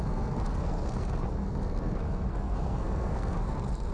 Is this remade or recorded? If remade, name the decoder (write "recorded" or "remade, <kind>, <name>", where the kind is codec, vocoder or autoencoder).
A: remade, codec, SNAC